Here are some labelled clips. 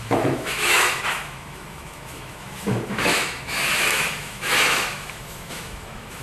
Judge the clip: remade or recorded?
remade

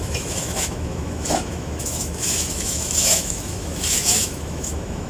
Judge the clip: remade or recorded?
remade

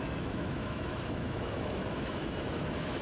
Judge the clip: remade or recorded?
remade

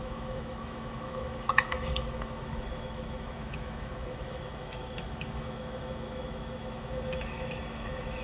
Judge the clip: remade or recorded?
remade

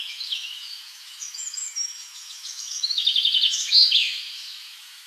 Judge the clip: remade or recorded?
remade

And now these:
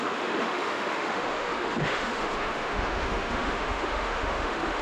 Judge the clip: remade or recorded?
remade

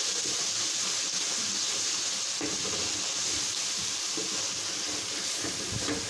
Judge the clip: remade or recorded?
recorded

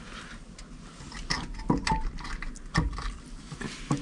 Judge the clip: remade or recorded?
recorded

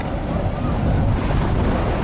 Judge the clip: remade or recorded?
recorded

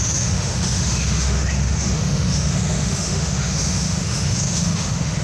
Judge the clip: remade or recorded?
remade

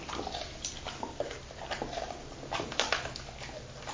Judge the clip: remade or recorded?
recorded